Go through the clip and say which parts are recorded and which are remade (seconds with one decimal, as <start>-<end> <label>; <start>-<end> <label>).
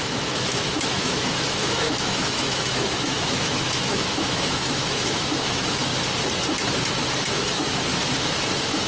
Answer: 0.0-5.9 remade; 5.9-7.3 recorded; 7.3-8.9 remade